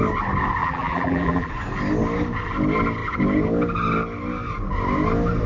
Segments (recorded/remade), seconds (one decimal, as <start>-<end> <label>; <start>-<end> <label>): 0.0-0.6 recorded; 0.6-1.5 remade; 1.5-5.5 recorded